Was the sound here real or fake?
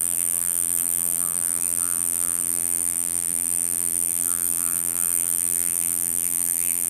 fake